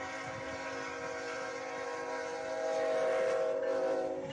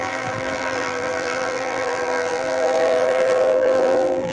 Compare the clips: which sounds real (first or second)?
first